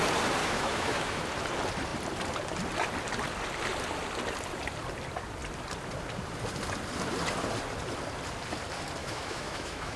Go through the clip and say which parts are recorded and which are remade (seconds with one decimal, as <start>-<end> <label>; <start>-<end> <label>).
0.0-0.4 recorded; 0.4-1.2 remade; 1.2-9.0 recorded; 9.0-10.0 remade